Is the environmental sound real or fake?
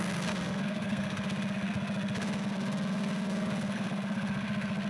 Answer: fake